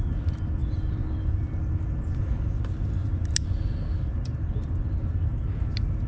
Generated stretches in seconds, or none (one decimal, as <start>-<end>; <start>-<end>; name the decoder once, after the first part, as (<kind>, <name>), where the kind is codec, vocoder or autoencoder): none